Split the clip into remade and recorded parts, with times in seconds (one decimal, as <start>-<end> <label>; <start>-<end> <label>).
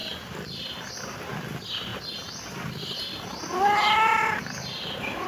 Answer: 0.0-5.3 recorded